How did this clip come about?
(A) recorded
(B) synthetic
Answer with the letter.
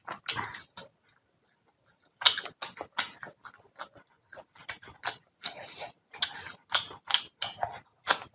A